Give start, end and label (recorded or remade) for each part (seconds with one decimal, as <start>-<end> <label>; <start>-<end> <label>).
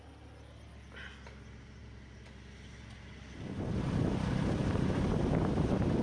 0.0-6.0 recorded